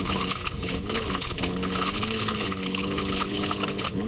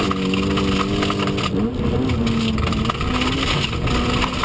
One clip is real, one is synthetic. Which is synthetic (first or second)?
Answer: first